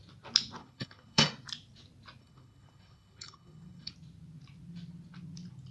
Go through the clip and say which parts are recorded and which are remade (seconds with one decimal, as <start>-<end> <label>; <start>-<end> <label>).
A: 0.0-0.6 recorded; 0.6-1.3 remade; 1.3-2.2 recorded; 2.2-3.9 remade; 3.9-5.7 recorded